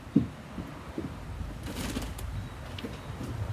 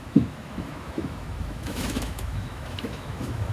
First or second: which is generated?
second